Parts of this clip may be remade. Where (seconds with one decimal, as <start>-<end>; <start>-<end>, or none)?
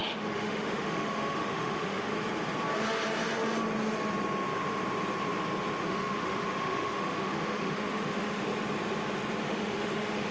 0.0-2.1; 5.8-8.5; 9.4-10.3